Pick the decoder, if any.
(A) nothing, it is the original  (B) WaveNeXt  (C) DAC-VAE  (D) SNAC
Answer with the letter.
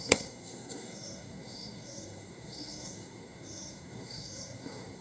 D